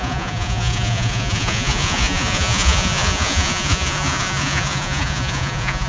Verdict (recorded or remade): remade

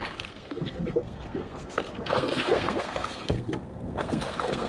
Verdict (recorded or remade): remade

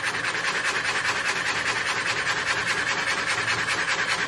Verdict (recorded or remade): recorded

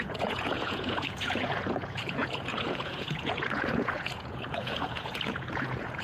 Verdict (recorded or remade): remade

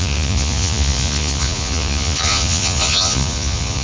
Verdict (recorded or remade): remade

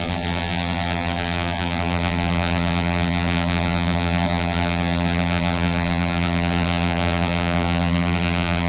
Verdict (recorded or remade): remade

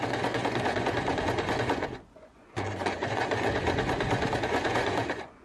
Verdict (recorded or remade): remade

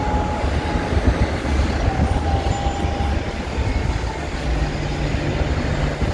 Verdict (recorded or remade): recorded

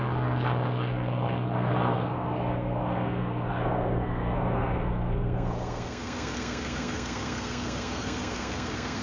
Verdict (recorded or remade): remade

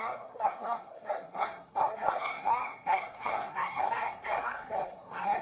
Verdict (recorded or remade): remade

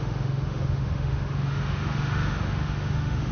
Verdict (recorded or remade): remade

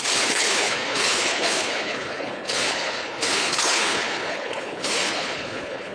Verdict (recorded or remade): remade